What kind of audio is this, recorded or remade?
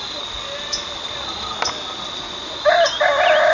recorded